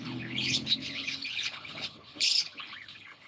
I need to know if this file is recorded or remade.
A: remade